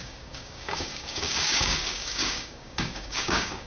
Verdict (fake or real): fake